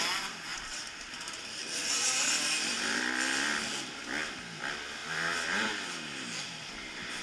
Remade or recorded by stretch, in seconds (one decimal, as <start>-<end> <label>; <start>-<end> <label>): 0.0-0.5 recorded; 0.5-3.0 remade; 3.0-7.2 recorded